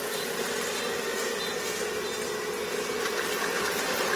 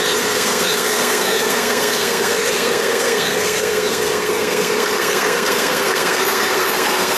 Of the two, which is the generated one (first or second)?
second